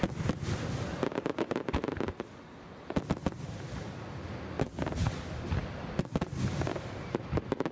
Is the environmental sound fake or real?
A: real